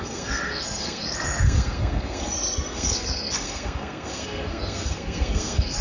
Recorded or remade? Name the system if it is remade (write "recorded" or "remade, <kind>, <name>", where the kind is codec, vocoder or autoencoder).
remade, codec, SNAC